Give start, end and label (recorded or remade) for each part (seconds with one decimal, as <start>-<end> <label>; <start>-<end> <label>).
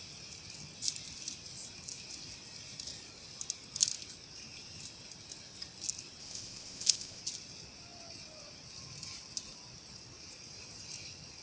0.0-6.2 recorded; 6.2-7.2 remade; 7.2-11.4 recorded